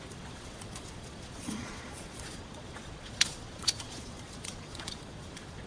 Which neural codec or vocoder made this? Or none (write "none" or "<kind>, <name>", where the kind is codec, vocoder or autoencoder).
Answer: vocoder, Vocos